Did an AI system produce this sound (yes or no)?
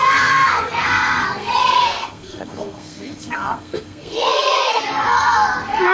yes